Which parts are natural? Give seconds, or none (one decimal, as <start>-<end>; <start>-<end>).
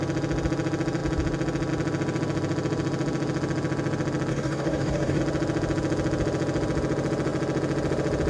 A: 0.0-4.3; 5.2-8.3